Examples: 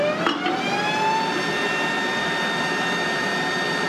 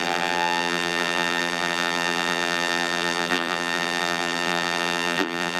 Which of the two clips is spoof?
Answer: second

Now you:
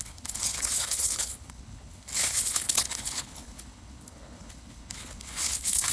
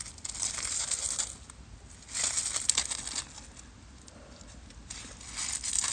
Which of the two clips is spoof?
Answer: first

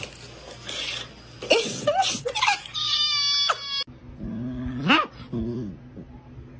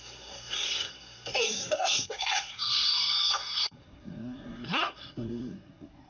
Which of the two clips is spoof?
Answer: second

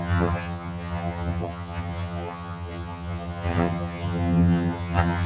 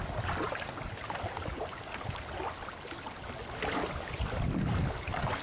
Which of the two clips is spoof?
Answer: first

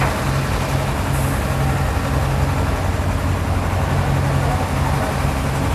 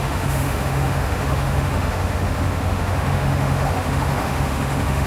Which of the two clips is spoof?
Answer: second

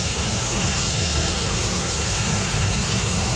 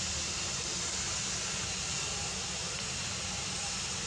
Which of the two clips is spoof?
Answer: first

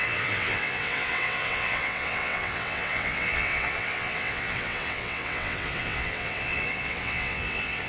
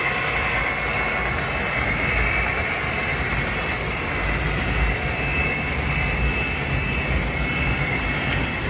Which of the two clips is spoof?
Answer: first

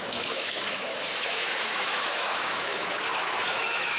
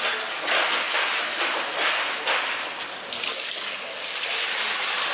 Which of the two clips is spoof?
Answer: first